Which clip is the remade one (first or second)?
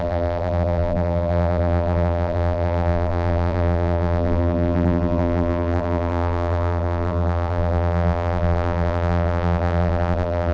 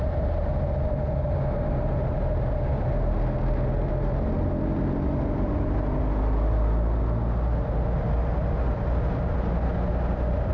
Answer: first